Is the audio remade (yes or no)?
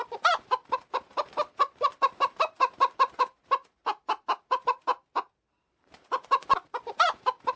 yes